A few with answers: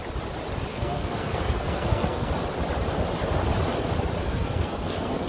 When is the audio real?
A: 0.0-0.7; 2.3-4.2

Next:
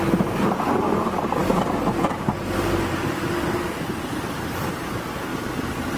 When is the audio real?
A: 0.0-6.0

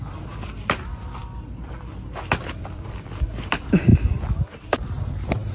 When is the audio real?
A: 1.2-2.6; 3.9-4.6

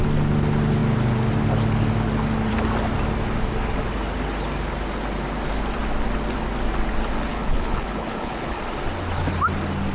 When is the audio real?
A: 0.0-7.3; 8.6-9.9

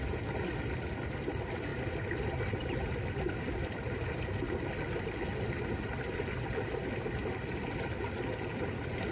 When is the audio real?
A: 0.0-9.1

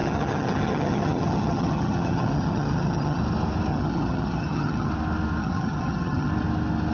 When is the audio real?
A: 3.2-3.7; 4.9-5.4; 6.3-6.9